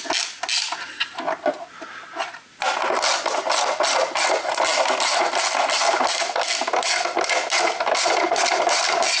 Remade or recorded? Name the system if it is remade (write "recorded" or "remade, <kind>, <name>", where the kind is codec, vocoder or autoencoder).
recorded